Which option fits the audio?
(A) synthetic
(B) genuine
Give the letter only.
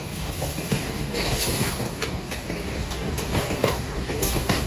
A